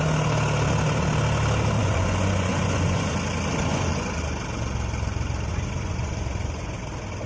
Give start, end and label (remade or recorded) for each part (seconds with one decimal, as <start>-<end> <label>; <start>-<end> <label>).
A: 0.0-1.8 recorded; 1.8-3.1 remade; 3.1-3.7 recorded; 3.7-4.2 remade; 4.2-5.5 recorded; 5.5-6.8 remade; 6.8-7.3 recorded